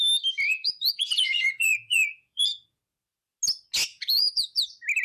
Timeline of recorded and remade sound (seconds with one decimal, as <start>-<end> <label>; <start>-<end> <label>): 0.0-0.5 recorded; 0.5-2.8 remade; 2.8-3.9 recorded; 3.9-4.6 remade; 4.6-5.0 recorded